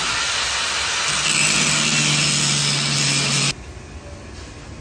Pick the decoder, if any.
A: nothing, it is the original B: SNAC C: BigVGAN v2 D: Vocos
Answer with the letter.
A